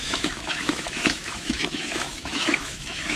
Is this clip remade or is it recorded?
remade